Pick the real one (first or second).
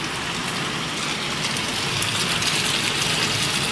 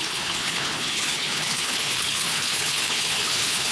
first